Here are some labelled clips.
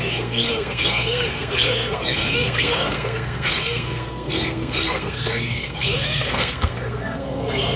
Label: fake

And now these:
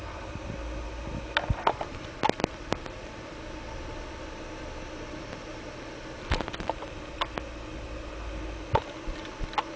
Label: real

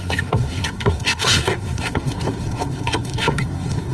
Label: fake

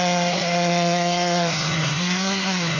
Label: fake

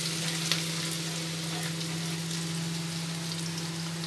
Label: real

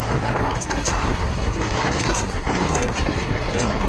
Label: fake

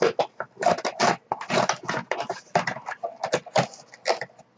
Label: real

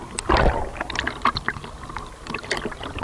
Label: real